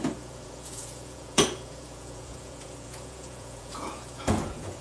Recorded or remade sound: remade